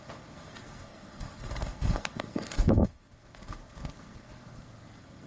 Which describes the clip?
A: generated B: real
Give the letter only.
A